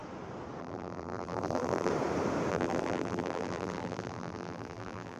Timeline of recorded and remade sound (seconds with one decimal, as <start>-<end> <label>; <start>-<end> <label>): 0.0-0.6 recorded; 0.6-1.9 remade; 1.9-2.5 recorded; 2.5-5.2 remade